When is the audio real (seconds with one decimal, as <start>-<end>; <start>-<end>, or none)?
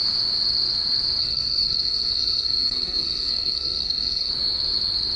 0.0-1.2; 4.3-5.2